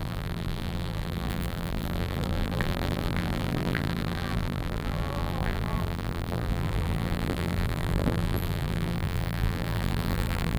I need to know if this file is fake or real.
fake